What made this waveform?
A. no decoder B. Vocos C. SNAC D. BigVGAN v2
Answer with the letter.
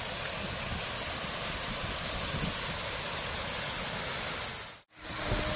A